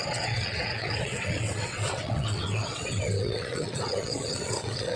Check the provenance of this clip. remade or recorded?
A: remade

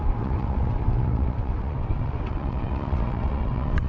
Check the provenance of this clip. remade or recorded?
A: remade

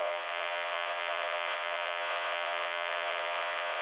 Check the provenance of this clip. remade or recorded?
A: remade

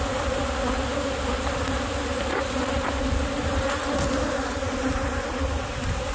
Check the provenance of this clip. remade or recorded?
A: recorded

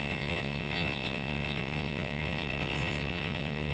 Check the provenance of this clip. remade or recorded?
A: remade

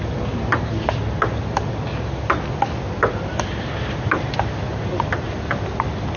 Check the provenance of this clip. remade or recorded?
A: recorded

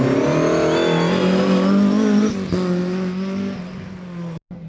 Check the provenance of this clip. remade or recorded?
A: recorded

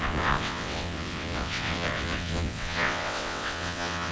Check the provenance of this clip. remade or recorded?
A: remade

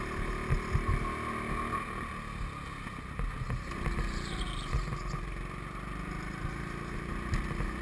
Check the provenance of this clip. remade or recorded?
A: recorded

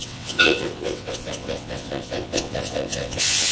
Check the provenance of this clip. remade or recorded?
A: remade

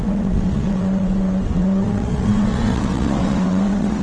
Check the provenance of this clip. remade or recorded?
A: remade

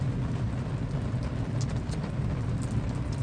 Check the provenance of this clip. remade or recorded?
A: recorded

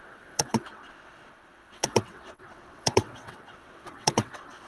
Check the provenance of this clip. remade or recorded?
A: remade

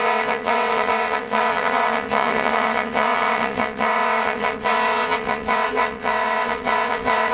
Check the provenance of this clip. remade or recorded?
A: remade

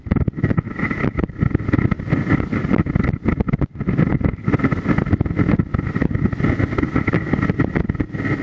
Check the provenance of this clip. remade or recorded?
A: recorded